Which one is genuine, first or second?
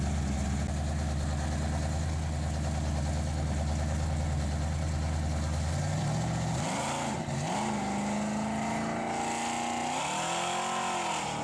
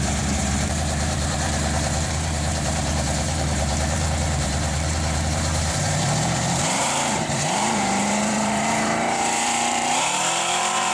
first